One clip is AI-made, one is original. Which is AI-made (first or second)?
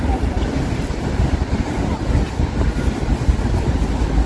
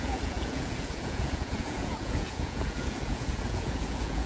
second